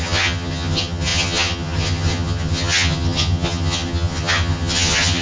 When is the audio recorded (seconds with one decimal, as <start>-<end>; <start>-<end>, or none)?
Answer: none